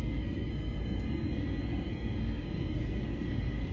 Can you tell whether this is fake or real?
fake